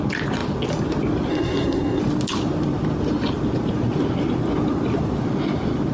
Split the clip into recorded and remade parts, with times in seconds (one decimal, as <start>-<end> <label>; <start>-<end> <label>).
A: 0.0-1.3 recorded; 1.3-2.0 remade; 2.0-5.9 recorded

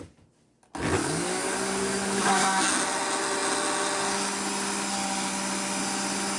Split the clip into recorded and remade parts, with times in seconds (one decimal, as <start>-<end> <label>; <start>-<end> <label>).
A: 0.0-1.0 recorded; 1.0-2.6 remade; 2.6-6.4 recorded

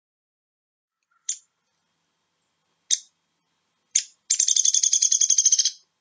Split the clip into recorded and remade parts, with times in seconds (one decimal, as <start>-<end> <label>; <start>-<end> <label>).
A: 0.0-1.4 remade; 1.4-6.0 recorded

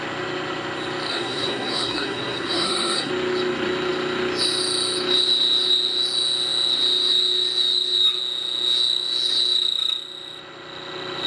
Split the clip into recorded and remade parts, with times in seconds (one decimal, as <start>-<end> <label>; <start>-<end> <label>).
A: 0.0-1.1 recorded; 1.1-3.1 remade; 3.1-11.3 recorded

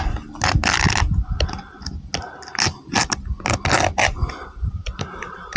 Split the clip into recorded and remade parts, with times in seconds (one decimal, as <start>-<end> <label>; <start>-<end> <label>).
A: 0.0-5.6 recorded

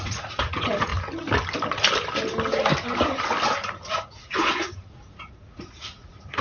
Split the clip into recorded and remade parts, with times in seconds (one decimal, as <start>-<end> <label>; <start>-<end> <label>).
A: 0.0-0.9 remade; 0.9-4.0 recorded; 4.0-6.4 remade